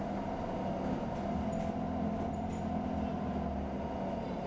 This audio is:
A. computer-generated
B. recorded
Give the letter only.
B